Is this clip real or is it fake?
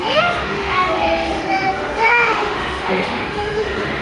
fake